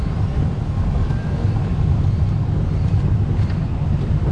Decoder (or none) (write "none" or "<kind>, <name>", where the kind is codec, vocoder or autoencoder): none